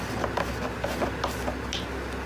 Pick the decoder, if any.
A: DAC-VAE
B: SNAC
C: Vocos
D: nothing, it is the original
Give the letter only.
D